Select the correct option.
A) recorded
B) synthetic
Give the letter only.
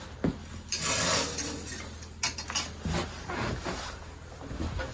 A